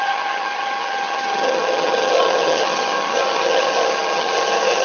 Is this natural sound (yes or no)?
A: no